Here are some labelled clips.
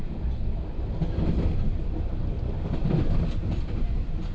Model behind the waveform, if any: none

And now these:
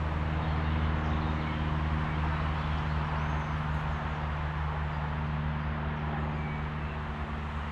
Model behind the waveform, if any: none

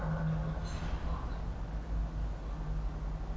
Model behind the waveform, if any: none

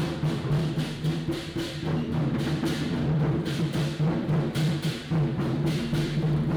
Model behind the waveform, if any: vocoder, BigVGAN v2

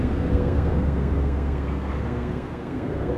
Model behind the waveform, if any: codec, SNAC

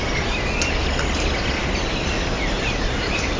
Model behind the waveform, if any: none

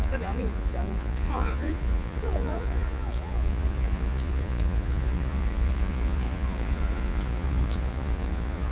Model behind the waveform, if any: vocoder, Vocos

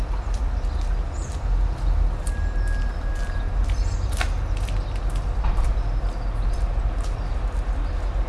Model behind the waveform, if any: none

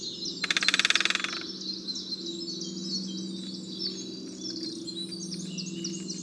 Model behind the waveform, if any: none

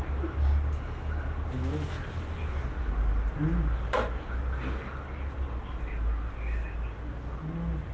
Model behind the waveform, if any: none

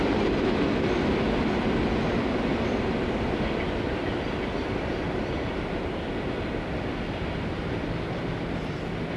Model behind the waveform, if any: none